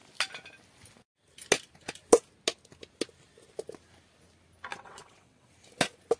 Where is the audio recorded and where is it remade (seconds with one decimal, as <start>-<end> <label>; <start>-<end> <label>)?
0.0-4.7 recorded; 4.7-5.5 remade; 5.5-6.2 recorded